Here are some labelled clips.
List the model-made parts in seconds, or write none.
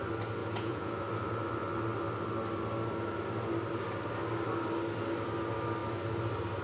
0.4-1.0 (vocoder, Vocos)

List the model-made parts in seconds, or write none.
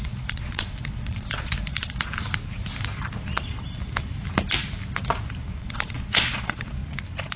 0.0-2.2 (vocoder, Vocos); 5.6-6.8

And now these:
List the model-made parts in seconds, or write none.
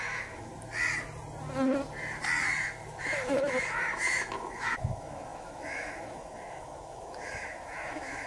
0.0-0.5 (autoencoder, DAC-VAE); 3.0-8.3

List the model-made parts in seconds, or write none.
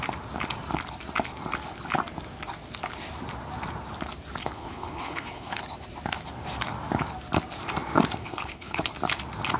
4.4-5.6 (codec, HILCodec); 8.2-8.9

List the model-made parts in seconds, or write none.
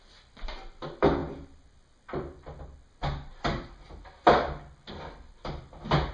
none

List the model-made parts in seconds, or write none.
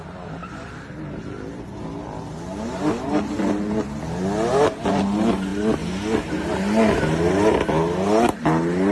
none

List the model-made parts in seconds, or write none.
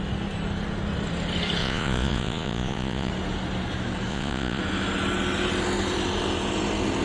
1.6-3.1 (vocoder, Vocos); 4.1-4.6